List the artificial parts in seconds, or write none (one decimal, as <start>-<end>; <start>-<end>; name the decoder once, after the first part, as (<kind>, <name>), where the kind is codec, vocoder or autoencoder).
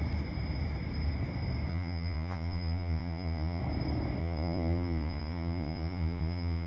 1.7-3.6 (vocoder, Vocos); 4.2-6.7